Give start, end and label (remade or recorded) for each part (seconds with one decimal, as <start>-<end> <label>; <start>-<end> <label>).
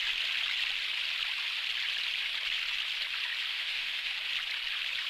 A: 0.0-3.5 recorded; 3.5-4.1 remade; 4.1-5.1 recorded